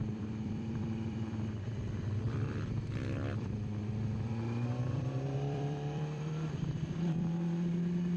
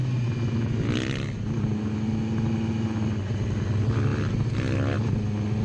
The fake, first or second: first